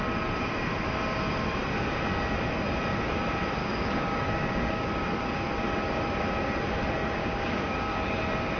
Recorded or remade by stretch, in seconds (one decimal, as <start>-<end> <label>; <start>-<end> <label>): 0.0-3.6 recorded; 3.6-4.9 remade; 4.9-7.2 recorded; 7.2-8.2 remade; 8.2-8.6 recorded